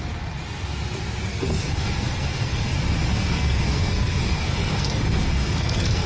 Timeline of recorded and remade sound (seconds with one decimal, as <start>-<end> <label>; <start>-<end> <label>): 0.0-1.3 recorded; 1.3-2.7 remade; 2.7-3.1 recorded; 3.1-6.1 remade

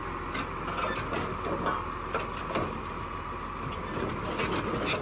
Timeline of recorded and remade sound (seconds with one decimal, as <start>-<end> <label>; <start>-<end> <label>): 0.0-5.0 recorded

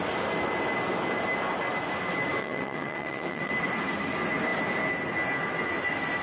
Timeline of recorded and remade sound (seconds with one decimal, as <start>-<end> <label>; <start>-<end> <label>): 0.0-2.4 recorded; 2.4-3.5 remade; 3.5-6.2 recorded

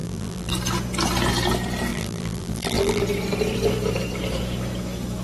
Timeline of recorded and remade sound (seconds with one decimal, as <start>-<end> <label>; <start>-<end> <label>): 0.0-0.5 remade; 0.5-1.9 recorded; 1.9-3.0 remade; 3.0-5.2 recorded

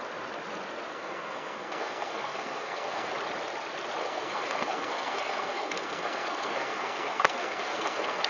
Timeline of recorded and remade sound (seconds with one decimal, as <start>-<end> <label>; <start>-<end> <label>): 0.0-0.9 recorded; 0.9-3.1 remade; 3.1-4.0 recorded; 4.0-8.3 remade

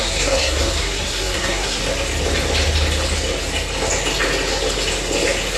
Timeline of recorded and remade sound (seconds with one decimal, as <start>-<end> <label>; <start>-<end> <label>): 0.0-1.8 remade; 1.8-5.6 recorded

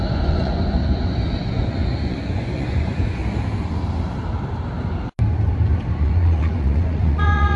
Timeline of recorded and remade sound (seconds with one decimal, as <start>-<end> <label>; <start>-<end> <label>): 0.0-3.2 remade; 3.2-6.0 recorded; 6.0-7.6 remade